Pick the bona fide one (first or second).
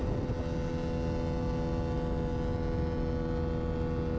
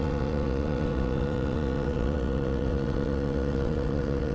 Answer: first